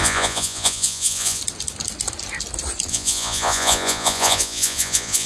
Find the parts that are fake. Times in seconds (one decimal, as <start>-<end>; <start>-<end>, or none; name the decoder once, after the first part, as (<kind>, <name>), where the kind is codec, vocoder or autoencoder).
0.0-1.4 (vocoder, Vocos); 2.9-5.3